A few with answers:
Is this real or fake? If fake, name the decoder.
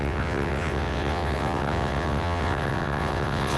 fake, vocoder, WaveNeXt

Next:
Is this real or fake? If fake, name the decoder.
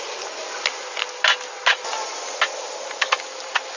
real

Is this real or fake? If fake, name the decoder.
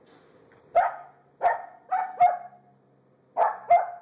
real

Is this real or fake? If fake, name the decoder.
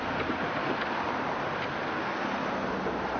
real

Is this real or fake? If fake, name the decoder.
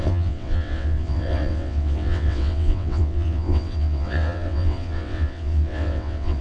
fake, vocoder, WaveNeXt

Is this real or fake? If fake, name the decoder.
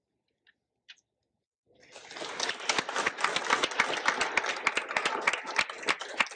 real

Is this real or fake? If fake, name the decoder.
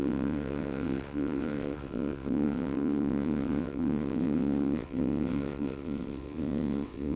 fake, vocoder, WaveNeXt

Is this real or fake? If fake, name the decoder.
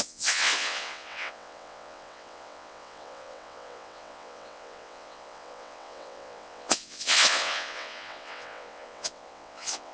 fake, vocoder, WaveNeXt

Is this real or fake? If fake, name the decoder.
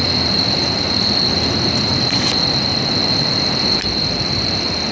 real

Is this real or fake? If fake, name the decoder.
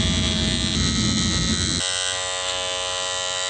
real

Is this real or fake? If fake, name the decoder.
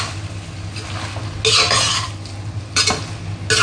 real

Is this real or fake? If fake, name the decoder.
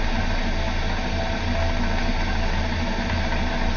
real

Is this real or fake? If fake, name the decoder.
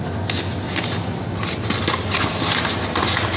real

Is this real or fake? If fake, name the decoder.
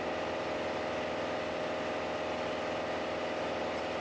real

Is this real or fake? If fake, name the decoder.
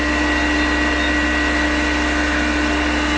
real